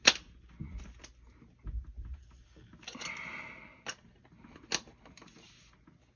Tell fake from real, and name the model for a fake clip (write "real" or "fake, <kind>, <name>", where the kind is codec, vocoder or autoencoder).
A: real